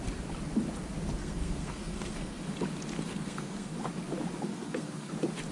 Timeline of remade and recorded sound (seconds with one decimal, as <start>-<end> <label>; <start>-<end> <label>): 0.0-1.2 recorded; 1.2-2.4 remade; 2.4-3.1 recorded; 3.1-3.7 remade; 3.7-4.5 recorded; 4.5-5.1 remade; 5.1-5.5 recorded